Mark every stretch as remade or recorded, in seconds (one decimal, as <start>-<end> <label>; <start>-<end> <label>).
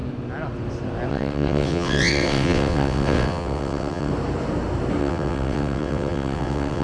0.0-1.1 recorded; 1.1-4.1 remade; 4.1-5.0 recorded; 5.0-6.8 remade